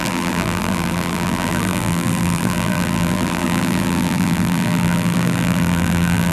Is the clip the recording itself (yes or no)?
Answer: no